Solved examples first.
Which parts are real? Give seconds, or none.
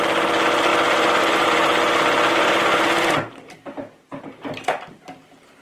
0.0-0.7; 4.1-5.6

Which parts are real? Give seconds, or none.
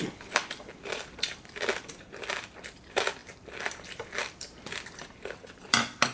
none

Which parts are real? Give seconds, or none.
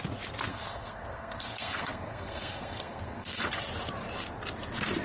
0.0-0.5; 3.5-5.0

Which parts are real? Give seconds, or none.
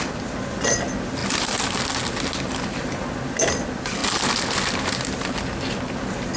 0.0-6.4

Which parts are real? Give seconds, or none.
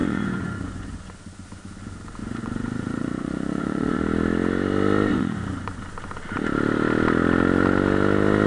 1.1-2.2; 4.0-5.1; 5.8-8.5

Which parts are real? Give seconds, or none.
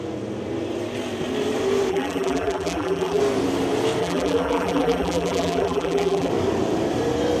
0.0-1.9; 3.2-4.0; 6.3-7.4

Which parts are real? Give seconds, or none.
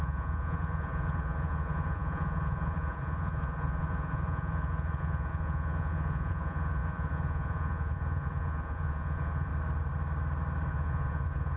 9.5-10.7